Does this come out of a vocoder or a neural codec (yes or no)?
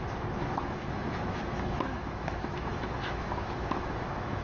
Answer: yes